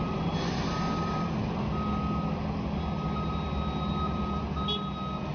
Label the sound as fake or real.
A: real